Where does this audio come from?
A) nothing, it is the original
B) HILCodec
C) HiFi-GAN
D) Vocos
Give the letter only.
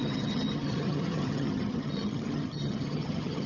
C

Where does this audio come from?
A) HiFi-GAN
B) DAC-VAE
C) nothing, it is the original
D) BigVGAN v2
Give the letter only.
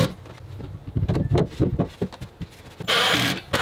C